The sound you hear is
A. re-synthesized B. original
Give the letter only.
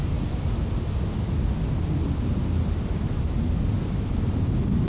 B